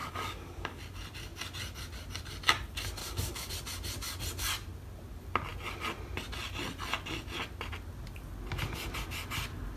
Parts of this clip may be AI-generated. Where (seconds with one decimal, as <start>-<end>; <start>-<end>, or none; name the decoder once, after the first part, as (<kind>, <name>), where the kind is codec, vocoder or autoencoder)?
0.0-0.8 (codec, DAC); 3.0-3.5